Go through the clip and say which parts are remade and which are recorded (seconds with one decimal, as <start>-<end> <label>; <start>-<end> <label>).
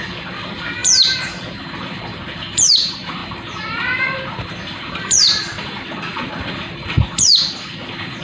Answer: 0.0-8.2 remade